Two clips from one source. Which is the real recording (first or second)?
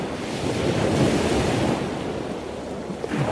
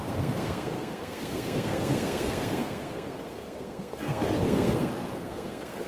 first